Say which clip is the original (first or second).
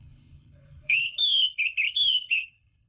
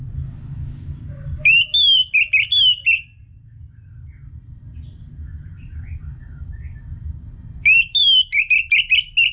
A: second